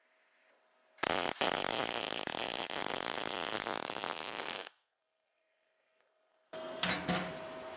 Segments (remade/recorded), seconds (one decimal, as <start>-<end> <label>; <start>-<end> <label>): 0.0-4.4 recorded; 4.4-6.9 remade; 6.9-7.8 recorded